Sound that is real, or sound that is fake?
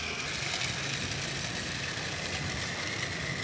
real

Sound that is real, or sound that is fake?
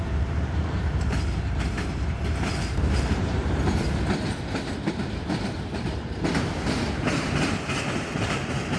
fake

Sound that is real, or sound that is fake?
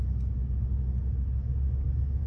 real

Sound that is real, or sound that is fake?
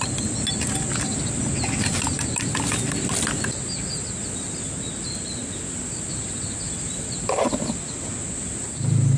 real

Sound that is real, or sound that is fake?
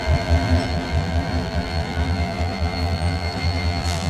fake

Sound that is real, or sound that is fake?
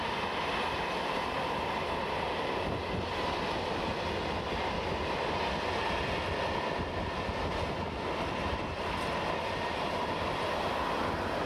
real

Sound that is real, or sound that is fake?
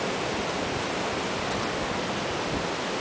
real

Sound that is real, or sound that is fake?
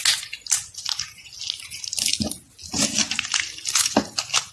real